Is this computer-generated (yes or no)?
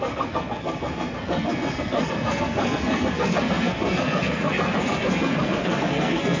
yes